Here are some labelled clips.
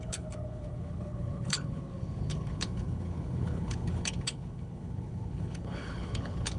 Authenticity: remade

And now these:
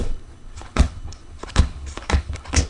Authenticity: remade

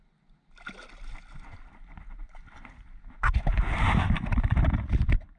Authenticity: recorded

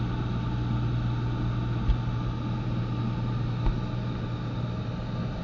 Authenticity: recorded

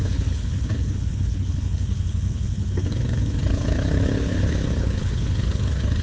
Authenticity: remade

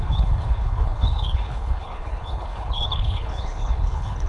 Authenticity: remade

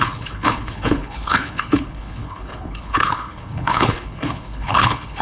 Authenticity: remade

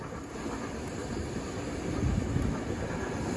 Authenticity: recorded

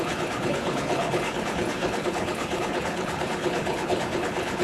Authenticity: remade